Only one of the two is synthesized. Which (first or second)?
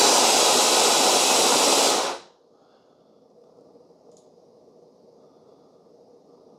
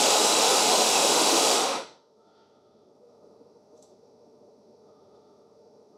second